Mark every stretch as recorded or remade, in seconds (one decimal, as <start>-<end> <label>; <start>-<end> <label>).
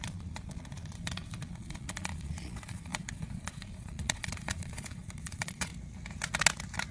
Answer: 0.0-5.7 remade; 5.7-6.9 recorded